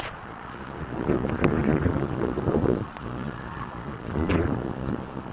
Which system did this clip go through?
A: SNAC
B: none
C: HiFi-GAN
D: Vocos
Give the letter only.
D